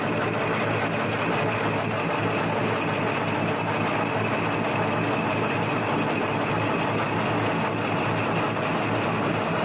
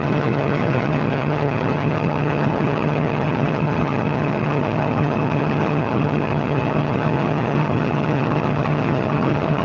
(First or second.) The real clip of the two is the first